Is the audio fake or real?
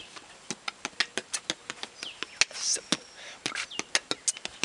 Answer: real